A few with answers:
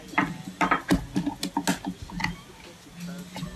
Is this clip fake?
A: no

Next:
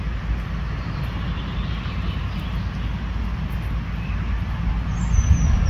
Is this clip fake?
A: no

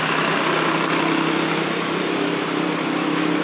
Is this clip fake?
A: yes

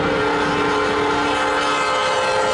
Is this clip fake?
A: no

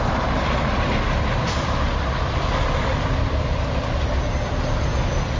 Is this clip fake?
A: no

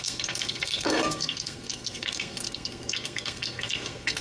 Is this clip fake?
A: yes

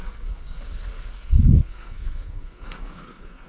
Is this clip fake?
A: yes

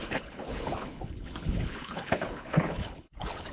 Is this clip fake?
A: yes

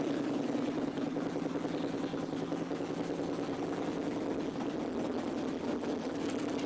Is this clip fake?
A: no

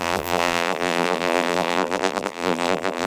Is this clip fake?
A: yes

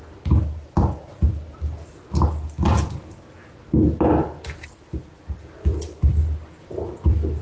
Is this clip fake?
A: no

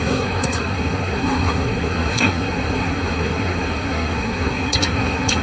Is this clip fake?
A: yes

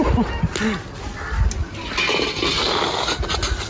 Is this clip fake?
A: no